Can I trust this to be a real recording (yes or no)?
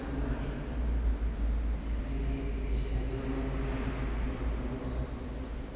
yes